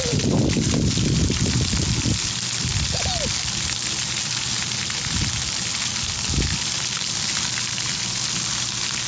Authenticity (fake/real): real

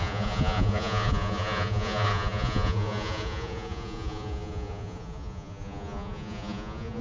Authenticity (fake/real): fake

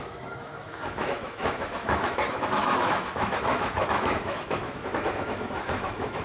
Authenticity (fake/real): fake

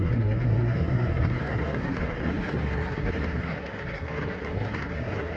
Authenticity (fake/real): fake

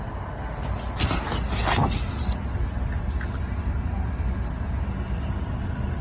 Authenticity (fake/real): real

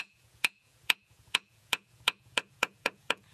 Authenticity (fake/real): fake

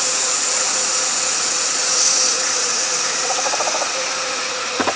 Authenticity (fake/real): fake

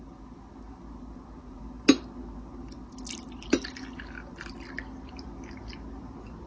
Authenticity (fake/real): real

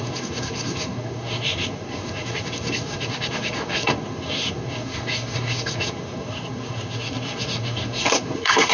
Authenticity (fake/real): fake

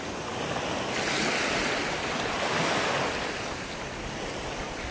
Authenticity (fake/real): real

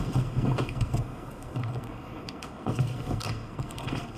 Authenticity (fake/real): fake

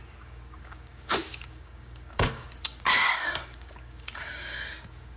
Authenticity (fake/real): fake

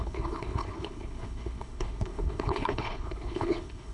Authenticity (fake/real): fake